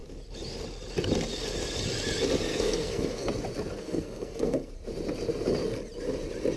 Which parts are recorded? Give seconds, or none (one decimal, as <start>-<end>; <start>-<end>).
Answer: 0.0-2.5; 3.3-3.8; 4.7-6.6